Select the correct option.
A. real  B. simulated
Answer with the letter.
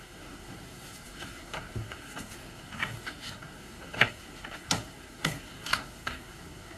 B